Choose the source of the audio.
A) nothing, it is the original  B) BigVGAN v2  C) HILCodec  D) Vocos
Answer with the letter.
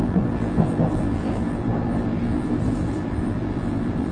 B